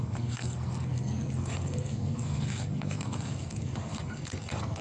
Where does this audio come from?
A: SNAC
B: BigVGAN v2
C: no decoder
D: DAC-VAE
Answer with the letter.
A